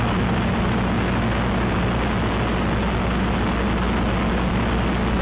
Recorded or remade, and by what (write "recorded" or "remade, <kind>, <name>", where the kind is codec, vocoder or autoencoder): recorded